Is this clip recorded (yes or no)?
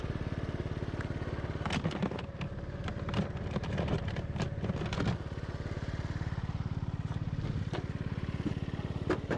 yes